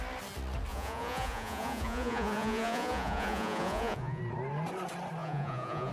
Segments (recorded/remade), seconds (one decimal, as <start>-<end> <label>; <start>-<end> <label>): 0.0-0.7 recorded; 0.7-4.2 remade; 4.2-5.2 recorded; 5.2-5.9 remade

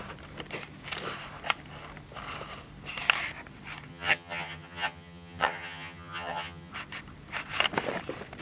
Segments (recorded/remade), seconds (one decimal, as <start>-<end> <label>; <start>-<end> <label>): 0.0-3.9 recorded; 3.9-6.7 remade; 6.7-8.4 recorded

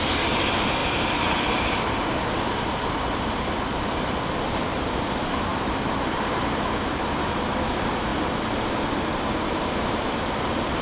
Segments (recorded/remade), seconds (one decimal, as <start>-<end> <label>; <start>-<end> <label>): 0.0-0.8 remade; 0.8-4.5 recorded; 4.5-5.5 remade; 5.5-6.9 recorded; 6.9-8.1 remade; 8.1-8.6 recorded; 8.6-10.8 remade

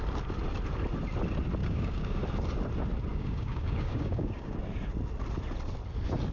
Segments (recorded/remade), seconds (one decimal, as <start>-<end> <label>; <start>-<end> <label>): 0.0-1.6 recorded; 1.6-2.2 remade; 2.2-3.1 recorded; 3.1-4.6 remade; 4.6-6.3 recorded